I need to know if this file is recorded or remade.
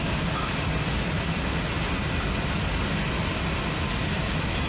recorded